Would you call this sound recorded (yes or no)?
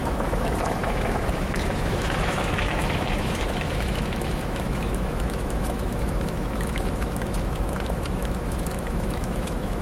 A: no